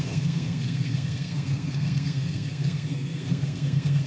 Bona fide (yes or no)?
no